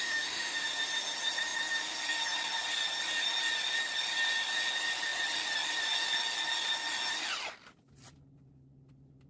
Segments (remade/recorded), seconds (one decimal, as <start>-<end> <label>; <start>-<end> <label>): 0.0-0.7 remade; 0.7-9.3 recorded